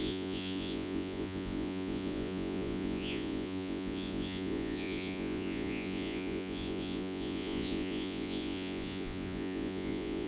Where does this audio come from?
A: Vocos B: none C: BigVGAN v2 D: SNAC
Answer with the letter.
A